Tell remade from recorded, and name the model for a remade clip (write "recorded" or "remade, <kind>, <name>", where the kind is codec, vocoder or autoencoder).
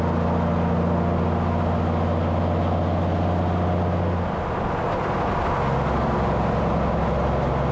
recorded